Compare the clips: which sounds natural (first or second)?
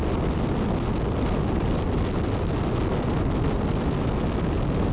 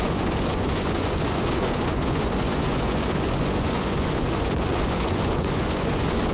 first